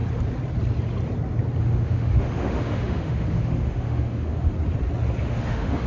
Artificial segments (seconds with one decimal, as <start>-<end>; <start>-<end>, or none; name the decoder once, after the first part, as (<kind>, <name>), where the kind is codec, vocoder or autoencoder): 1.6-4.5 (autoencoder, DAC-VAE); 5.2-5.9